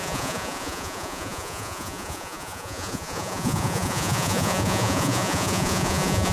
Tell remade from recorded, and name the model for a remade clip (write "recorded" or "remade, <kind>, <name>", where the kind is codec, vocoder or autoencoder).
remade, vocoder, Vocos